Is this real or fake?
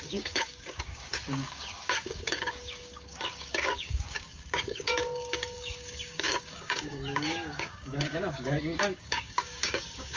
fake